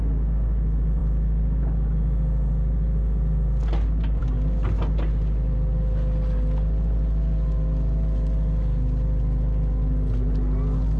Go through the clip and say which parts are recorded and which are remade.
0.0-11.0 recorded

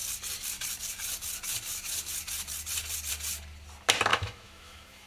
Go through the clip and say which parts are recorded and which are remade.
0.0-4.1 recorded; 4.1-5.1 remade

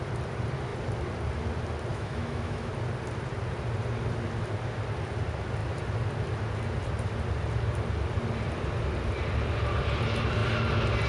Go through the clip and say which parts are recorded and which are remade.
0.0-1.9 recorded; 1.9-2.7 remade; 2.7-11.1 recorded